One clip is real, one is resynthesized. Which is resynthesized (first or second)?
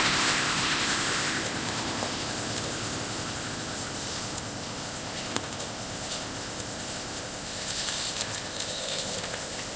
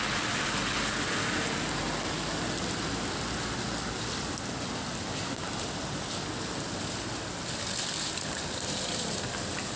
first